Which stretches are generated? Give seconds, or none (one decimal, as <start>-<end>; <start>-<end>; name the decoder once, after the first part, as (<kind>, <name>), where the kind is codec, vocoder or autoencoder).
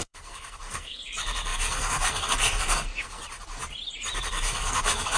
0.0-3.2 (codec, SNAC); 4.3-5.2